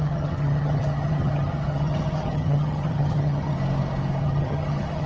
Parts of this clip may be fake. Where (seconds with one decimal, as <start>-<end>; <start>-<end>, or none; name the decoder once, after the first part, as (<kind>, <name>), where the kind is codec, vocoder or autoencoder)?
0.0-3.6 (vocoder, HiFi-GAN); 4.2-5.1